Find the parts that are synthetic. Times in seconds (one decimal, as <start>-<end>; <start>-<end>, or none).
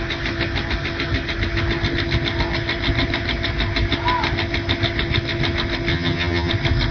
5.9-6.5